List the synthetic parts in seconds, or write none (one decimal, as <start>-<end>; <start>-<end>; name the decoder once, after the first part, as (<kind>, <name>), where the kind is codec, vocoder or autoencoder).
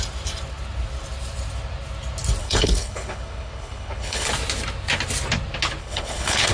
2.4-4.3 (codec, HILCodec); 5.8-6.5